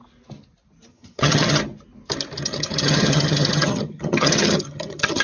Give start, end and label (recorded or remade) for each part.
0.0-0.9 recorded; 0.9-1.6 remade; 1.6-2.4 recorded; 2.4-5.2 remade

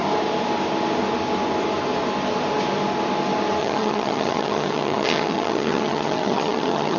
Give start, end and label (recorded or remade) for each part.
0.0-3.6 recorded; 3.6-7.0 remade

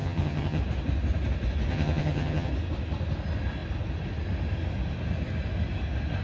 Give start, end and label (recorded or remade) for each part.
0.0-0.6 remade; 0.6-1.7 recorded; 1.7-2.5 remade; 2.5-6.2 recorded